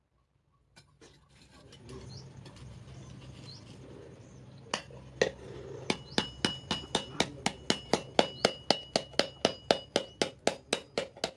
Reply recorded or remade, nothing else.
recorded